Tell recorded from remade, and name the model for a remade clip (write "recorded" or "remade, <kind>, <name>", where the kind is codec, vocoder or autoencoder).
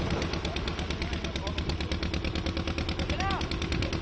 recorded